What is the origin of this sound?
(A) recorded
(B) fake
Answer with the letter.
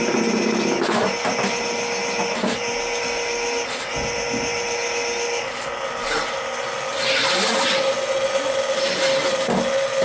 A